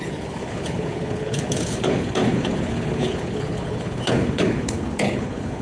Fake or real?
fake